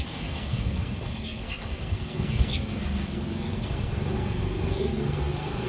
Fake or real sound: fake